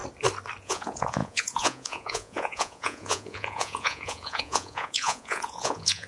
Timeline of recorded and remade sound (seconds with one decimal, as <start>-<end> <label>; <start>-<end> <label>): 0.0-0.6 recorded; 0.6-6.1 remade